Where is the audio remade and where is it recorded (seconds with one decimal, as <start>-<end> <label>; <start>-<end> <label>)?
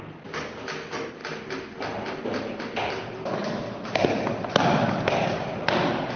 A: 0.0-6.2 recorded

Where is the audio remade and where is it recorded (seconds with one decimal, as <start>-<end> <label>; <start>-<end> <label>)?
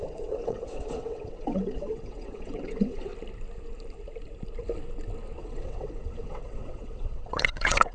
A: 0.0-3.1 remade; 3.1-5.4 recorded; 5.4-7.9 remade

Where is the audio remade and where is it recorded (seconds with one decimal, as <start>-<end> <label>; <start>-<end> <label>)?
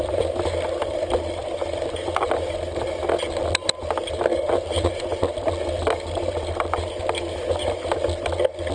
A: 0.0-1.4 recorded; 1.4-3.1 remade; 3.1-4.3 recorded; 4.3-4.9 remade; 4.9-8.7 recorded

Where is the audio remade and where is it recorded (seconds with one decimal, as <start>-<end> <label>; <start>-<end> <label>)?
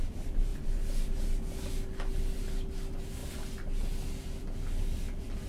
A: 0.0-5.5 recorded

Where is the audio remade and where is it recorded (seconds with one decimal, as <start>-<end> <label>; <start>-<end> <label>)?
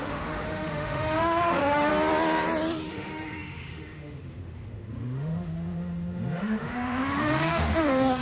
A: 0.0-1.9 remade; 1.9-2.9 recorded; 2.9-8.2 remade